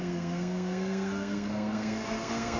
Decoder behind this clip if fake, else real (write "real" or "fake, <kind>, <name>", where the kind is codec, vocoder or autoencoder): fake, codec, SNAC